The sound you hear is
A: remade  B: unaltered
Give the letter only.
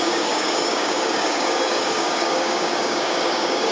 A